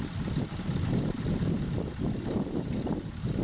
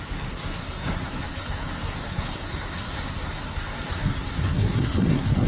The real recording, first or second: first